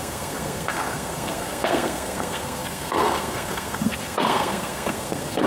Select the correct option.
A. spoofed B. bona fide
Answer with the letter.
A